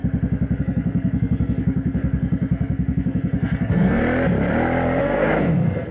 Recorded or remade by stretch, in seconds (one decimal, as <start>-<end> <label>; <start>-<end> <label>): 0.0-0.6 recorded; 0.6-4.0 remade; 4.0-5.0 recorded; 5.0-5.9 remade